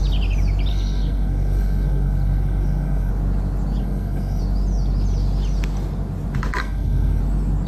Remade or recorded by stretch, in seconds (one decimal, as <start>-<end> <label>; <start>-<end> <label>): 0.0-0.7 recorded; 0.7-3.1 remade; 3.1-3.8 recorded; 3.8-4.4 remade; 4.4-6.6 recorded; 6.6-7.2 remade; 7.2-7.7 recorded